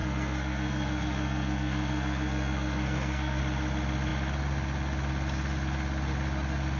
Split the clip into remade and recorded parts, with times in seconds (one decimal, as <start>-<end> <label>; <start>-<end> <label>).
0.0-3.4 remade; 3.4-6.8 recorded